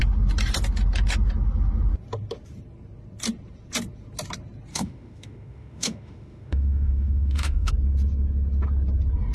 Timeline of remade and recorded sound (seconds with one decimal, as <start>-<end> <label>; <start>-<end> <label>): 0.0-4.7 recorded; 4.7-7.7 remade; 7.7-9.3 recorded